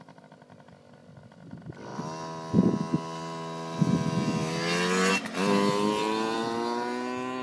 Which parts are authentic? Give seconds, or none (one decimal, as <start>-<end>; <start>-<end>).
0.0-7.4